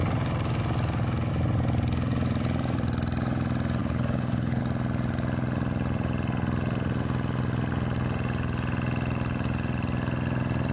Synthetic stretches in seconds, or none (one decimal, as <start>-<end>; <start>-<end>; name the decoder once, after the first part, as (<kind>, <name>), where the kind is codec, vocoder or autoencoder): 3.8-4.6 (codec, HILCodec)